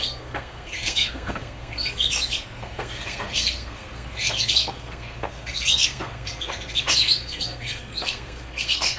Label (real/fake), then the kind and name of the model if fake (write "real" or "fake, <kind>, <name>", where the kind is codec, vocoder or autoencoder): fake, codec, SNAC